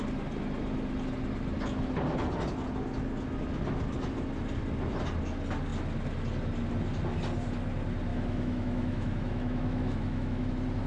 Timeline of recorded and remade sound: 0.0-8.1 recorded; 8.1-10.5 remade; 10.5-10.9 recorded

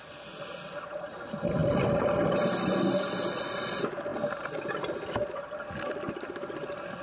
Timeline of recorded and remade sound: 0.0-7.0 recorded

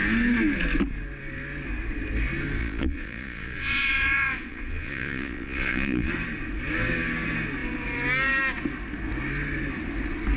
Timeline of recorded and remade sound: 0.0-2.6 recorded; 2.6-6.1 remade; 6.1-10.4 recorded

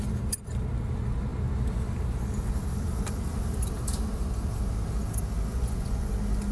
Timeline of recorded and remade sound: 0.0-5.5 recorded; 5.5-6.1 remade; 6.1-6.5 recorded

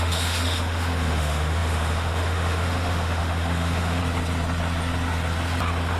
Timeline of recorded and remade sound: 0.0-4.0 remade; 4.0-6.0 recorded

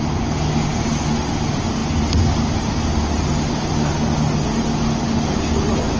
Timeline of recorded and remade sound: 0.0-6.0 recorded

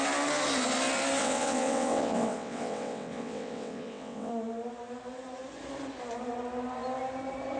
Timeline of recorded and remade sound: 0.0-1.2 recorded; 1.2-4.3 remade; 4.3-7.6 recorded

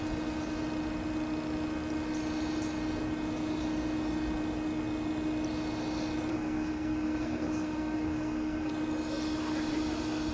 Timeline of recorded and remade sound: 0.0-6.3 recorded; 6.3-8.7 remade; 8.7-10.3 recorded